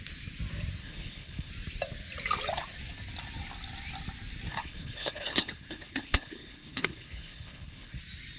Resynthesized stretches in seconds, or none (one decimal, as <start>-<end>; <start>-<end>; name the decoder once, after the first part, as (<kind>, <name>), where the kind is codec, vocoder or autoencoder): 0.8-1.5 (codec, HILCodec); 4.5-8.0